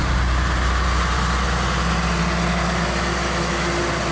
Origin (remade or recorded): recorded